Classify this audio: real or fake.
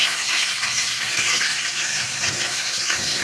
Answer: fake